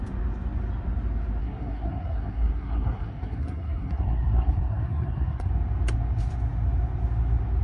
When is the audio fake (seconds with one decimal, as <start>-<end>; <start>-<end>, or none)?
1.4-5.5